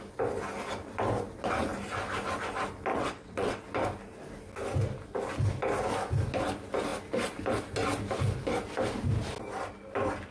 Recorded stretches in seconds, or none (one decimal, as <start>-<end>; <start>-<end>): 0.0-2.9; 3.6-10.3